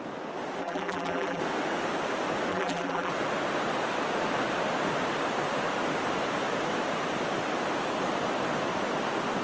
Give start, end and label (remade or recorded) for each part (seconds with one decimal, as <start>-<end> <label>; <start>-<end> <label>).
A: 0.0-0.6 recorded; 0.6-1.4 remade; 1.4-2.5 recorded; 2.5-3.1 remade; 3.1-9.4 recorded